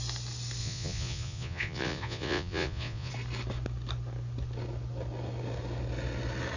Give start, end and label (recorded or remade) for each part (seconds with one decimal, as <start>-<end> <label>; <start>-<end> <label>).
0.0-0.6 recorded; 0.6-3.1 remade; 3.1-6.6 recorded